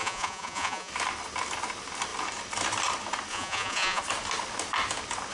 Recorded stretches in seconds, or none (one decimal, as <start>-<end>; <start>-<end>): 0.9-3.3; 4.0-5.3